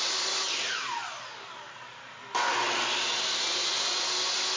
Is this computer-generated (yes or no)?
no